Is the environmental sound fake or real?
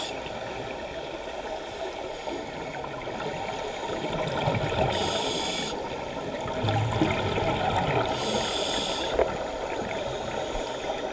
real